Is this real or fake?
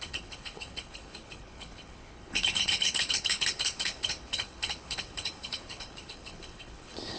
fake